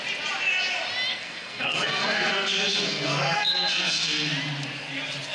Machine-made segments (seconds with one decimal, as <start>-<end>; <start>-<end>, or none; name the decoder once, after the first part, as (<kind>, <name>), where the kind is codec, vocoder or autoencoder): 1.1-4.3 (codec, SNAC)